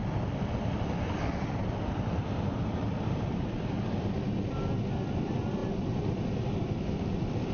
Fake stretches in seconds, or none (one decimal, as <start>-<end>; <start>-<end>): 0.0-7.5